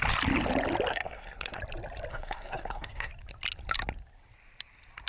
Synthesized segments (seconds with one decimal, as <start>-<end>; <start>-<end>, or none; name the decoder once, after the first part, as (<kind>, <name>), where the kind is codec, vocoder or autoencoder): 0.9-1.6 (codec, SNAC); 2.1-3.1